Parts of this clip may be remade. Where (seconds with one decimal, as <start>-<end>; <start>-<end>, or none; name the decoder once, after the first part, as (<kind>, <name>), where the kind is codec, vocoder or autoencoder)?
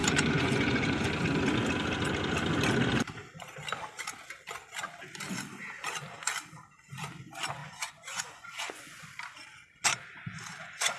0.0-1.1 (vocoder, Vocos); 7.6-9.0